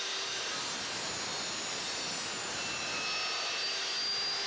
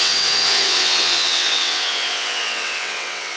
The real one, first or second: first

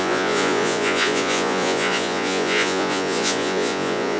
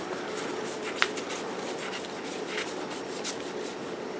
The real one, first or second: second